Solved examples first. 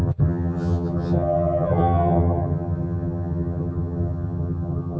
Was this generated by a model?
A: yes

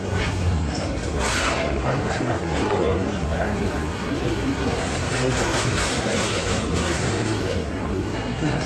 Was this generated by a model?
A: yes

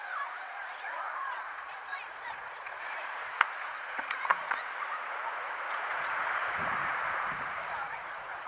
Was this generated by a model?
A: yes